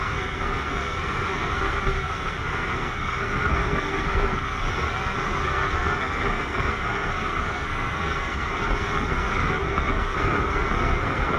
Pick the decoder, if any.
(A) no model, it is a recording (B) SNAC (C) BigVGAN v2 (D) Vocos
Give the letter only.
B